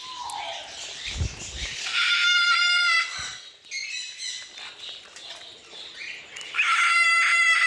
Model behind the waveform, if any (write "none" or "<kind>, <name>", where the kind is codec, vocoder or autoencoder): none